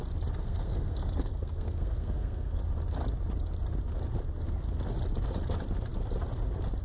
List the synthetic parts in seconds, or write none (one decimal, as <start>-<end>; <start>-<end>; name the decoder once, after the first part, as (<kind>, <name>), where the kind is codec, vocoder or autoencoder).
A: 0.4-2.6 (codec, SNAC)